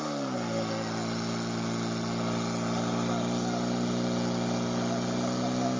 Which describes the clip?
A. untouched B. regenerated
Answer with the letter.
A